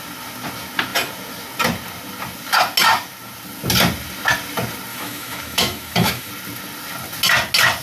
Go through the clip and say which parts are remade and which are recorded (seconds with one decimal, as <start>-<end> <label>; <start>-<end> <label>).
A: 0.0-4.9 recorded; 4.9-6.3 remade; 6.3-7.8 recorded